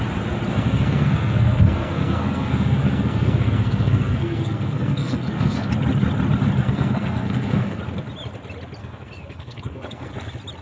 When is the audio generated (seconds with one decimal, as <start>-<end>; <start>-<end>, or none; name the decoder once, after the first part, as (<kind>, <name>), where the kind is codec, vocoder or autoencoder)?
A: 0.5-5.7 (codec, SNAC); 6.6-7.8; 8.8-10.1